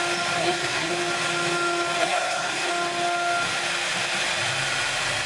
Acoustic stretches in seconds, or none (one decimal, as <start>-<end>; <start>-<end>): 0.0-0.4; 0.9-2.0; 2.7-5.3

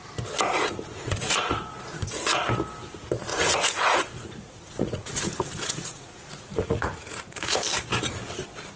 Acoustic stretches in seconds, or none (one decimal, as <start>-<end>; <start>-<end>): 0.0-0.7; 2.4-3.3; 7.6-8.8

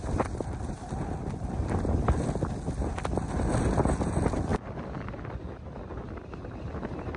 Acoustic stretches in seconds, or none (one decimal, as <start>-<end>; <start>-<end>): 0.0-7.2

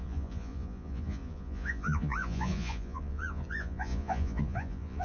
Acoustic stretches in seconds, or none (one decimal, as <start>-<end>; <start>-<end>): none